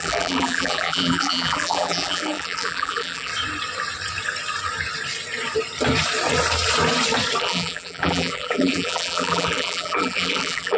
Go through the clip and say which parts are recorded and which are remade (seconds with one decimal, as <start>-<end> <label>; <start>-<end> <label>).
0.0-3.3 remade; 3.3-7.4 recorded; 7.4-10.8 remade